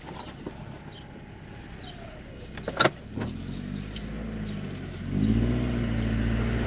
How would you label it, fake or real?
real